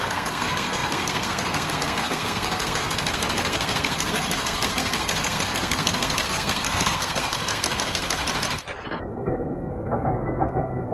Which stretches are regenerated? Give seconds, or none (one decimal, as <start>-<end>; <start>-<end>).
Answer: 0.0-8.2; 9.1-10.9